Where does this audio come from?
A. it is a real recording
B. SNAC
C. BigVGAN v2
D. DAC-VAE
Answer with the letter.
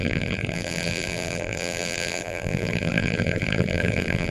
C